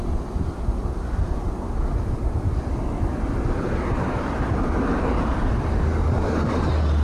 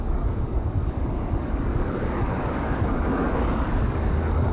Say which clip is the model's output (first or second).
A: second